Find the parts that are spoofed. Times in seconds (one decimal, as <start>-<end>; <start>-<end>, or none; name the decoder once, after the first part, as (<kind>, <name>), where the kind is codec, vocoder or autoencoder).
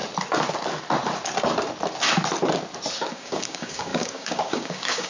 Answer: 3.1-5.1 (codec, DAC)